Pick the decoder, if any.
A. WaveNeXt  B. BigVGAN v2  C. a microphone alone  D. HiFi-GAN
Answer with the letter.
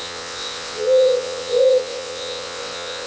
A